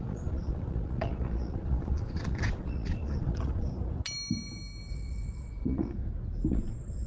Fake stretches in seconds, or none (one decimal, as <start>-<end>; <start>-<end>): 0.0-3.7; 4.9-6.0; 6.5-7.1